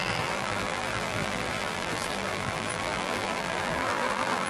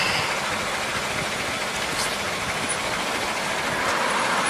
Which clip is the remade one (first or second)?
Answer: first